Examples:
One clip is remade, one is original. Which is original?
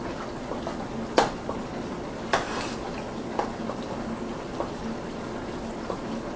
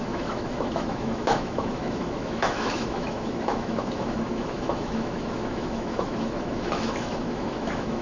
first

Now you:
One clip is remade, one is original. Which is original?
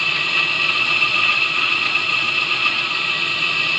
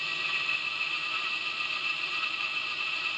second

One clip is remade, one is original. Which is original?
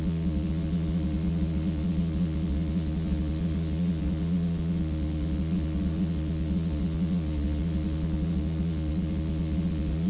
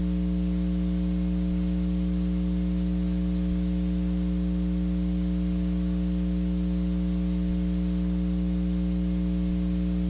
second